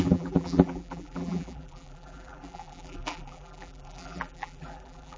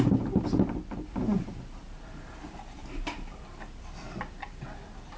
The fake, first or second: first